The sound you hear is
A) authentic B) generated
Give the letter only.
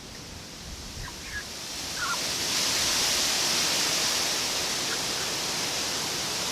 A